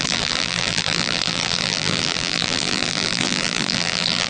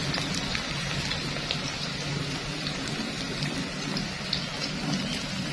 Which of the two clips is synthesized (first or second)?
first